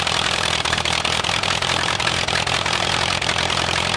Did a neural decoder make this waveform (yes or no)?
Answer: yes